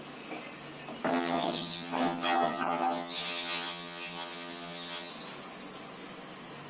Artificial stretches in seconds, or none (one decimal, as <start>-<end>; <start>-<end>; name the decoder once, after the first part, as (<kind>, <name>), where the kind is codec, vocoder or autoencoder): 1.1-5.1 (vocoder, HiFi-GAN)